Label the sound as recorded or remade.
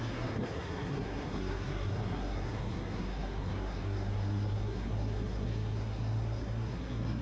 remade